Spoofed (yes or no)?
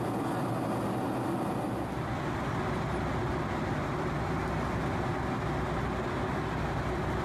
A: no